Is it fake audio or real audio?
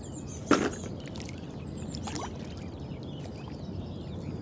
real